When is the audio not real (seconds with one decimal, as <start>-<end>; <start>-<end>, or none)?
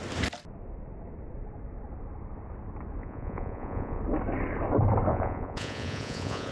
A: 3.0-4.0; 5.1-6.5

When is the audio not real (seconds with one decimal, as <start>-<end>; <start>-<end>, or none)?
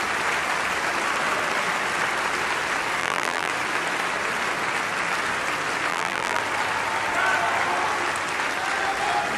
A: 3.0-3.5; 5.9-6.4